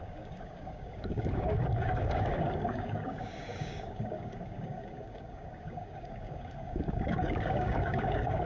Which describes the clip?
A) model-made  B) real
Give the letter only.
A